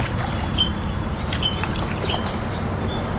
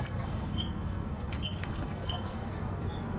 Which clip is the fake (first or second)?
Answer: second